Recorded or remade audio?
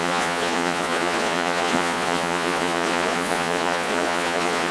remade